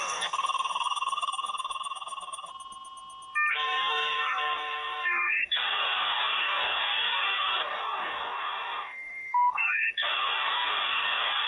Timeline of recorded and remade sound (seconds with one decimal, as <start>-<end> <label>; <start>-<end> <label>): 0.0-2.5 remade; 2.5-3.5 recorded; 3.5-11.5 remade